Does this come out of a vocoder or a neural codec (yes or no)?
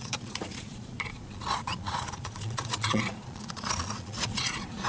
yes